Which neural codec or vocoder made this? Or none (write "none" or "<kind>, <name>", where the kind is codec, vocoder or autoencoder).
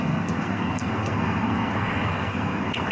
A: codec, SNAC